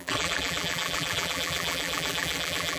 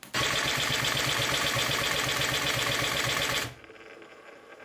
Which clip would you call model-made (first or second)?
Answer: first